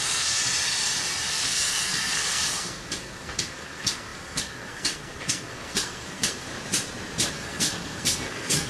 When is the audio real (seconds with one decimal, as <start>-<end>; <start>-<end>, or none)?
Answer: 0.4-1.3; 6.5-7.3